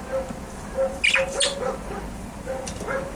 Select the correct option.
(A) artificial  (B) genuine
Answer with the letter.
B